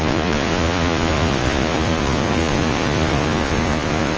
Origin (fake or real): fake